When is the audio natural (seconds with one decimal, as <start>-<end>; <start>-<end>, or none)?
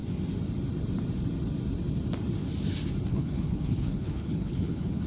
0.0-3.1